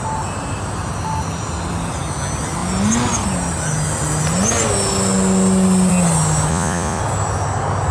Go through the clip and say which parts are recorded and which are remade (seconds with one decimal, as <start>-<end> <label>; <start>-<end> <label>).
0.0-6.5 recorded; 6.5-7.0 remade; 7.0-7.9 recorded